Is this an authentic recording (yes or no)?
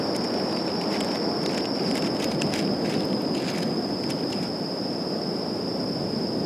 yes